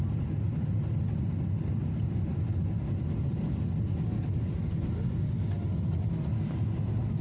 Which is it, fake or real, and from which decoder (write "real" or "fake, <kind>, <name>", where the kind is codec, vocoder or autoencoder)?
real